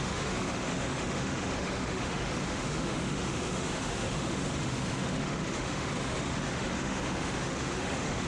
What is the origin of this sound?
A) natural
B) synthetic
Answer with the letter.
B